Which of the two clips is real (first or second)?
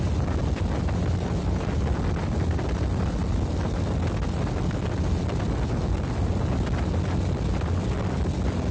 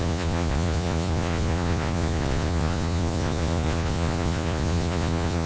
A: first